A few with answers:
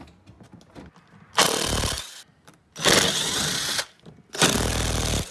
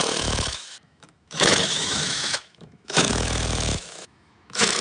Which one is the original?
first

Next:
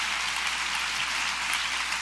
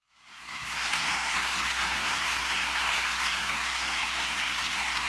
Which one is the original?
first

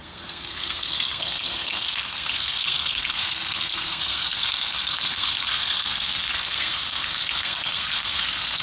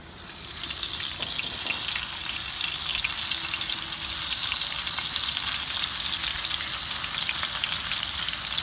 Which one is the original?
second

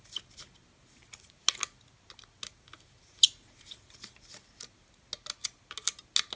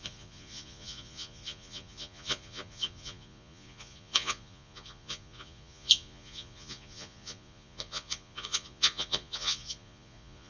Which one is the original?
first